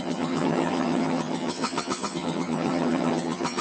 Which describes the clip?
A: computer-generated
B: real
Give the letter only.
A